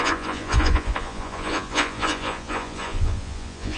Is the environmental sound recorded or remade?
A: remade